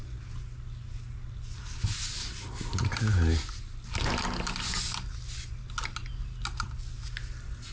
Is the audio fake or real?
real